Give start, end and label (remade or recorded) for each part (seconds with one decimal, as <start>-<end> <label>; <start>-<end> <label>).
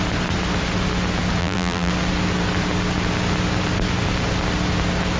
0.0-1.4 recorded; 1.4-1.9 remade; 1.9-5.2 recorded